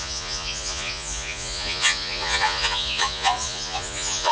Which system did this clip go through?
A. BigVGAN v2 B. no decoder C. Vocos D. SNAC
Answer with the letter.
C